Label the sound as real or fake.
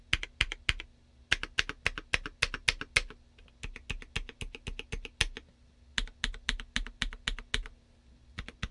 real